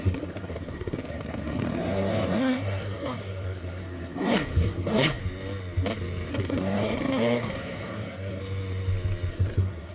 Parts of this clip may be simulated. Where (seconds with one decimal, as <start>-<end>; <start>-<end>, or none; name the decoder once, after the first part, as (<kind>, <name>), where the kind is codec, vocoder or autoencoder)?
0.0-5.2 (codec, SNAC); 6.3-8.4; 9.3-9.9